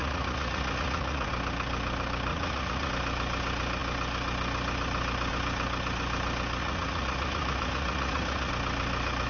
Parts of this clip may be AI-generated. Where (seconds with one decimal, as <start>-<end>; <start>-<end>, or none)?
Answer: 0.0-1.3; 2.3-2.9; 6.6-8.5